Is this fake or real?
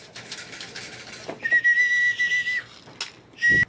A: real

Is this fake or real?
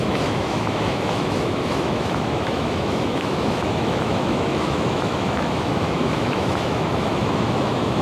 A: fake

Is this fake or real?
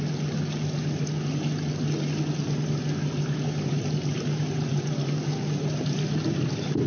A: real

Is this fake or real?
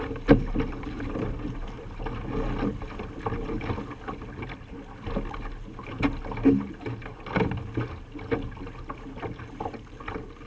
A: real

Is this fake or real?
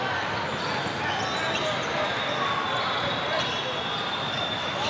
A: real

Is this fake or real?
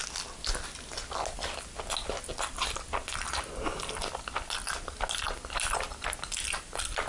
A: real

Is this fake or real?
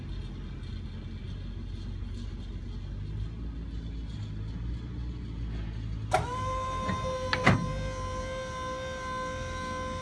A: real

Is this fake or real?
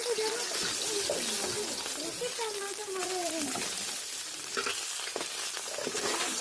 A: real